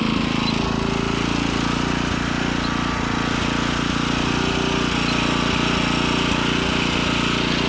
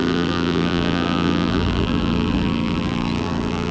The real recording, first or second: first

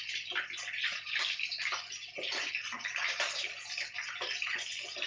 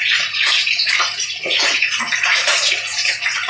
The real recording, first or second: first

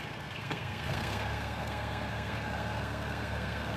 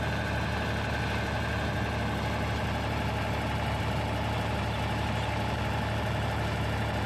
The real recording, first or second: second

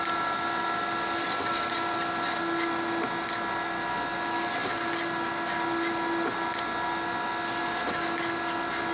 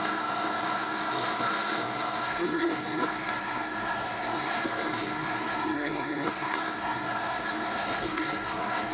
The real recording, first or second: first